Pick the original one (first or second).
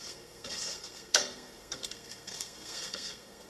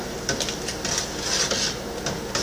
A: second